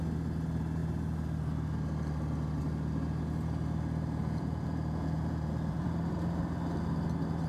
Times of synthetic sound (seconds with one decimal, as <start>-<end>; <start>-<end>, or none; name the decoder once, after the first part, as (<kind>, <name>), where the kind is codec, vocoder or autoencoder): 4.2-6.4 (vocoder, Vocos)